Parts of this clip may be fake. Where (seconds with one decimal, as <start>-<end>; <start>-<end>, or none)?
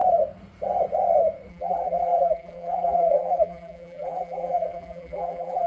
1.5-5.7